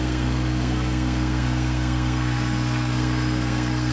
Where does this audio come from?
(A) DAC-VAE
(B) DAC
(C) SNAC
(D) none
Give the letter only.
C